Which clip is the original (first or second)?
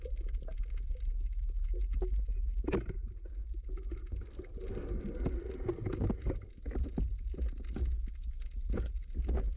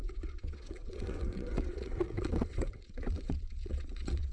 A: first